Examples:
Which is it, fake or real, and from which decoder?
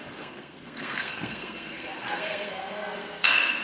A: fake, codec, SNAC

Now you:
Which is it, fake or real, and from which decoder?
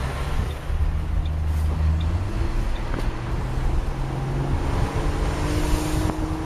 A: real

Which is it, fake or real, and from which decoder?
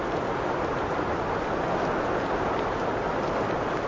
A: real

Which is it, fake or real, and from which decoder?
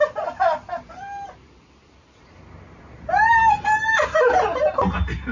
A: real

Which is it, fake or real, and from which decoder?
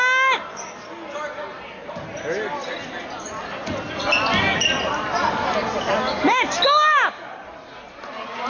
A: real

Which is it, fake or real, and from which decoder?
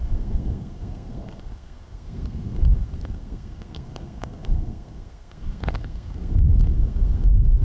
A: fake, codec, SNAC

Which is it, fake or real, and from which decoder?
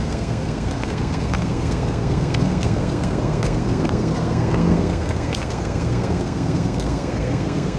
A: fake, codec, SNAC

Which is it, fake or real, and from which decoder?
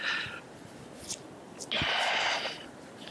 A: real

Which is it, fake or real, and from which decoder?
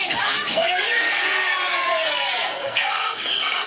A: fake, codec, SNAC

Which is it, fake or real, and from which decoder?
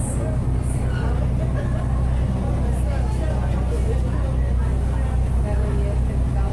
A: real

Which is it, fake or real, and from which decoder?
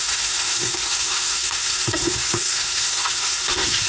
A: fake, codec, SNAC